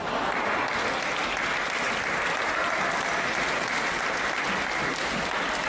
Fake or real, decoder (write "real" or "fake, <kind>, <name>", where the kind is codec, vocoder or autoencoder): real